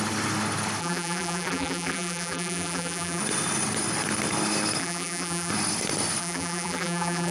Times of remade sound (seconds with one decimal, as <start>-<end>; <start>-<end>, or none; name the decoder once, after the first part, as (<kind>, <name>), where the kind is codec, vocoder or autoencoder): 0.8-3.2 (vocoder, BigVGAN v2); 4.8-5.5; 6.2-7.3

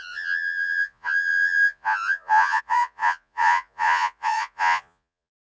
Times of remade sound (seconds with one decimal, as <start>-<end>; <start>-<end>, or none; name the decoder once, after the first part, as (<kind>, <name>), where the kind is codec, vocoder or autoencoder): 0.0-5.4 (vocoder, Vocos)

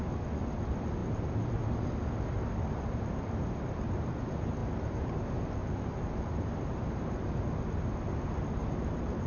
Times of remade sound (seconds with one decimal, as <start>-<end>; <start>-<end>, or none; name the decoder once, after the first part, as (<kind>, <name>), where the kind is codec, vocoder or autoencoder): 1.0-1.5 (vocoder, BigVGAN v2); 4.6-5.1; 5.6-7.4

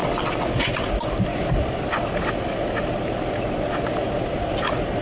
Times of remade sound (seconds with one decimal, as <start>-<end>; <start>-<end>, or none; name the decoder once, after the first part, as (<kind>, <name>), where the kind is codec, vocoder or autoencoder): none

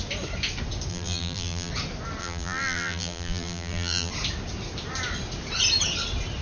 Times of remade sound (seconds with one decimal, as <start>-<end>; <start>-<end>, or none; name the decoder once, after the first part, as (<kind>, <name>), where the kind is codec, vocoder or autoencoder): 0.9-1.7 (vocoder, BigVGAN v2); 2.2-4.1

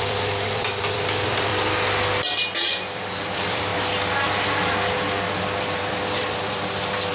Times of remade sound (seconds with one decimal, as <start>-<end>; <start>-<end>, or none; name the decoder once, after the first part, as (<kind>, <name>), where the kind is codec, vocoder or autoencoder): 0.0-1.5 (vocoder, BigVGAN v2); 2.7-3.7; 5.6-7.1

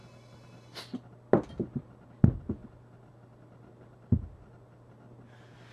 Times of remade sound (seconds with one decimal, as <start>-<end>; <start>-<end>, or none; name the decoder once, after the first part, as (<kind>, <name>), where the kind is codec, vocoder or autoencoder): none